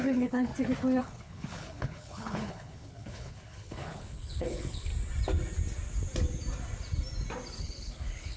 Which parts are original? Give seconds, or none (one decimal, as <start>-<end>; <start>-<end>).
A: 0.5-1.0; 4.9-7.6